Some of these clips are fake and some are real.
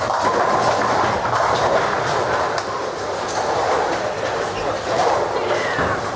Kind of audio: real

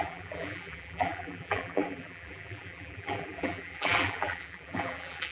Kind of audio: fake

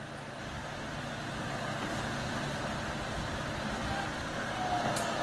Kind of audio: real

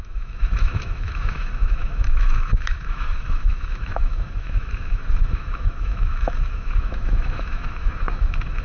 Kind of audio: fake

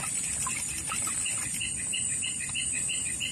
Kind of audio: real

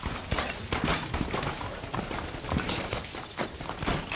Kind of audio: real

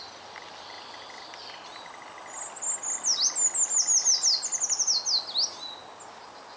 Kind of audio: real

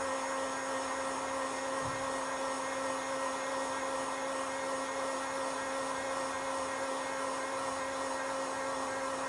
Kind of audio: real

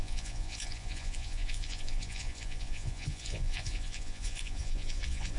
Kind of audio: fake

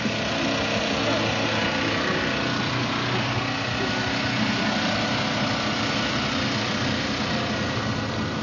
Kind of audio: real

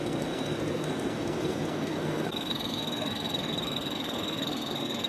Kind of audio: fake